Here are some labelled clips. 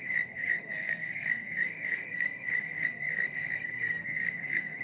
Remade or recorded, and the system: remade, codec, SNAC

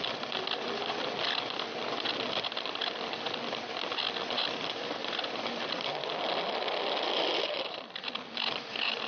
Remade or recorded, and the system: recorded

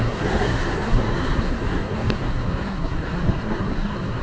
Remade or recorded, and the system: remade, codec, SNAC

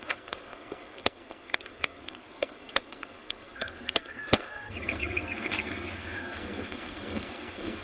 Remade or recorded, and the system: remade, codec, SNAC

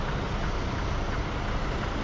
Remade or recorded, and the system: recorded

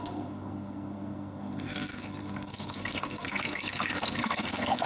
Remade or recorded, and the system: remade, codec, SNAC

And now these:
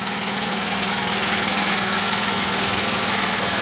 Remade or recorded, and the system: remade, codec, SNAC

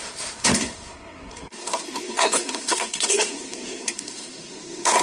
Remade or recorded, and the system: remade, codec, SNAC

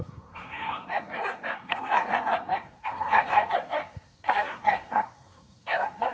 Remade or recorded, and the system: remade, codec, SNAC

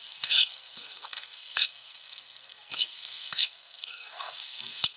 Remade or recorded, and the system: remade, codec, SNAC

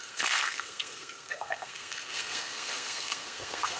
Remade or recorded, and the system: remade, codec, SNAC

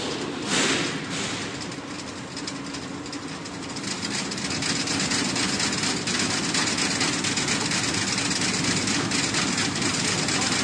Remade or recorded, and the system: recorded